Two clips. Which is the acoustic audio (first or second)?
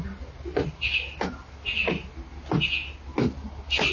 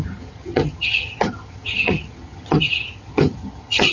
first